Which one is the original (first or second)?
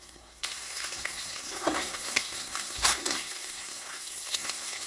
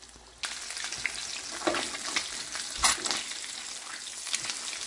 second